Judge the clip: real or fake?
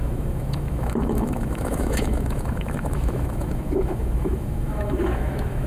fake